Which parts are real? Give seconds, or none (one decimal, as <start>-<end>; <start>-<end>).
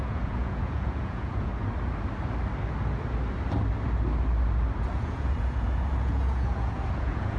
1.5-4.8